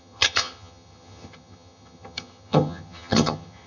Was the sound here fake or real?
fake